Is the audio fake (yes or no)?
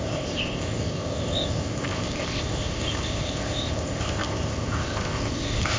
yes